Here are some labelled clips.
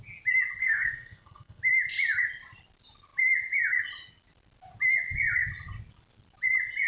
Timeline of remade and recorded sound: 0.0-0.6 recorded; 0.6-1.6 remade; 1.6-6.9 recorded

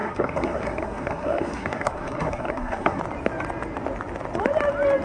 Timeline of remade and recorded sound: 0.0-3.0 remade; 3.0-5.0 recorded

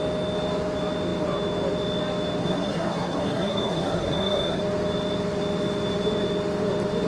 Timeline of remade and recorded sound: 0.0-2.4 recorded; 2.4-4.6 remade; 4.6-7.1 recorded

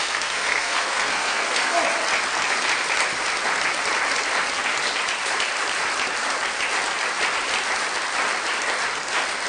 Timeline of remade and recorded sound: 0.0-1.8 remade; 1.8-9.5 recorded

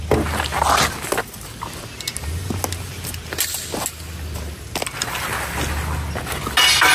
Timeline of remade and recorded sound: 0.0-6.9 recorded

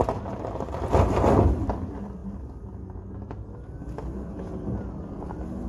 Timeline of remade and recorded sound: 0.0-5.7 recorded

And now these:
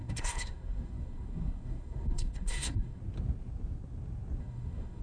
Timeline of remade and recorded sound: 0.0-3.0 remade; 3.0-4.4 recorded; 4.4-5.0 remade

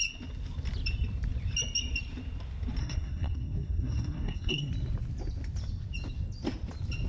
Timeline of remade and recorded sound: 0.0-2.8 recorded; 2.8-4.7 remade; 4.7-7.1 recorded